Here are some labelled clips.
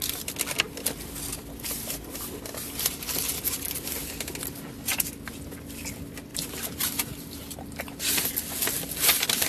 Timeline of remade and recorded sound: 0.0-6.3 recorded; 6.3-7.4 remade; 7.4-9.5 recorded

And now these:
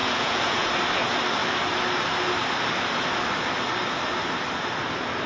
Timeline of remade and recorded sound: 0.0-0.7 remade; 0.7-5.3 recorded

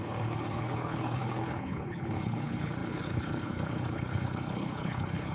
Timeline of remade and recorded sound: 0.0-5.3 remade

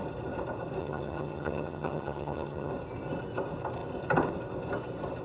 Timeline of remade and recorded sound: 0.0-0.8 recorded; 0.8-2.7 remade; 2.7-5.2 recorded